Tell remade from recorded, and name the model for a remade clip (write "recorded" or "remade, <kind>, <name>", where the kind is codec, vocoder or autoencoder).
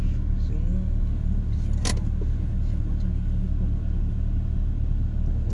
recorded